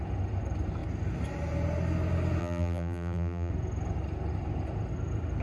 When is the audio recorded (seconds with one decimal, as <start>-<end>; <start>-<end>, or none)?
0.0-2.4; 3.5-5.4